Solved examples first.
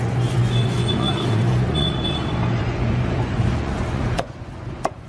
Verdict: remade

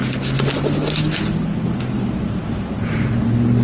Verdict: recorded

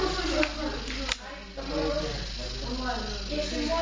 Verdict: recorded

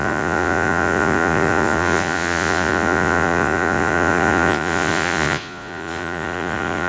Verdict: remade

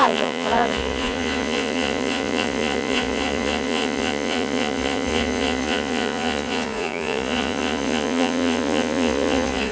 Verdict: remade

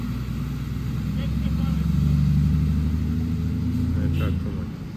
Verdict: recorded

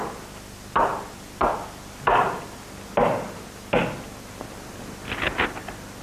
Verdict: recorded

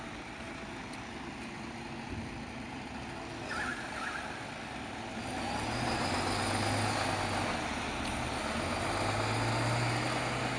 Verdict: recorded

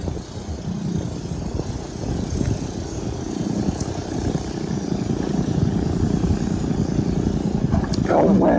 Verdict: recorded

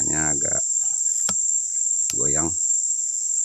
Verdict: recorded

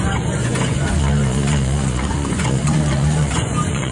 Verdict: remade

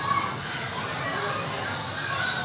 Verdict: recorded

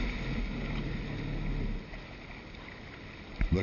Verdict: recorded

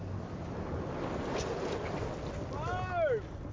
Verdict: recorded